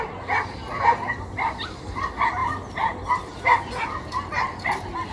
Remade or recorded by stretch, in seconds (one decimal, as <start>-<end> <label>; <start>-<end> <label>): 0.0-5.1 recorded